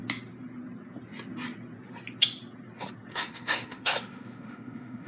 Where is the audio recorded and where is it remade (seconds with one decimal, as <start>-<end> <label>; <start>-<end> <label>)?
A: 0.0-3.1 recorded; 3.1-5.1 remade